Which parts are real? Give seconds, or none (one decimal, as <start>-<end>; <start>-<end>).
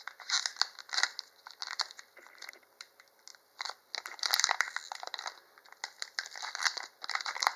0.0-7.6